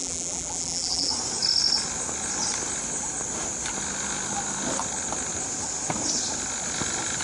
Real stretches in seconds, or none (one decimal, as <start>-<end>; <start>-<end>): 1.1-7.2